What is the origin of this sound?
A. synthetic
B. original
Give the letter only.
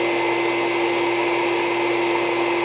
B